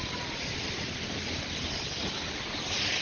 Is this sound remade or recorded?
recorded